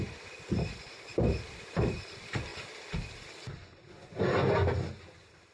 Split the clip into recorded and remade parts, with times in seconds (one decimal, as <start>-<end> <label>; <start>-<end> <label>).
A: 0.0-5.5 recorded